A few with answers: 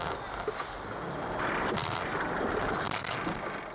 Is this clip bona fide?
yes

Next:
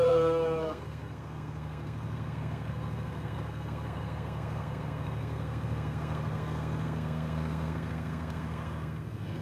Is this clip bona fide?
no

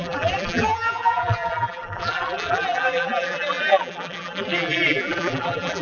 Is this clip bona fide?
no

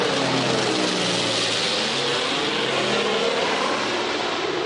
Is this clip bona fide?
yes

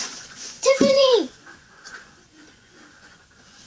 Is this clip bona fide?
no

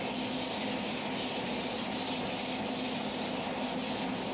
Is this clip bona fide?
yes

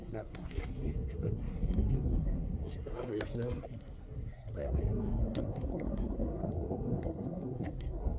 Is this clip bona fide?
no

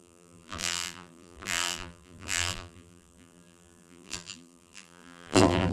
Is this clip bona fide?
no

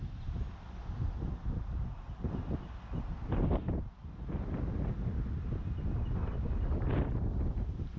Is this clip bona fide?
yes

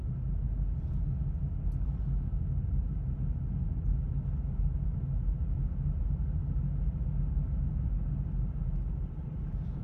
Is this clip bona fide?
yes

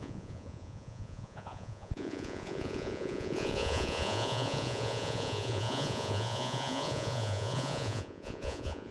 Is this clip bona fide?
no